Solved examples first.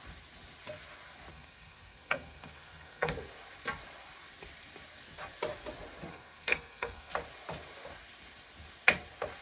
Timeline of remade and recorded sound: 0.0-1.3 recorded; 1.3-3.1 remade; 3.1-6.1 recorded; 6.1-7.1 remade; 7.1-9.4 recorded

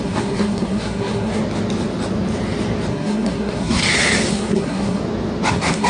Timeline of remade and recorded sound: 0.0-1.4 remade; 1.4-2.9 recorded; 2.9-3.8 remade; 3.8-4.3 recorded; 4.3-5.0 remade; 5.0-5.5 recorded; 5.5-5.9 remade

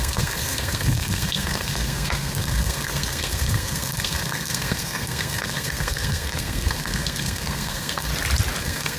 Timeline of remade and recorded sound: 0.0-8.1 remade; 8.1-8.6 recorded; 8.6-9.0 remade

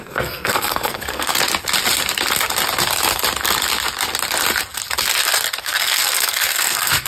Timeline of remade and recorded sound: 0.0-1.3 remade; 1.3-5.6 recorded; 5.6-7.1 remade